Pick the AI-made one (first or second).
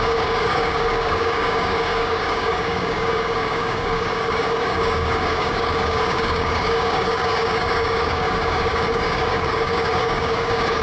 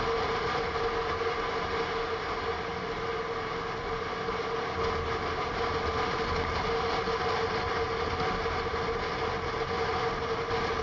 first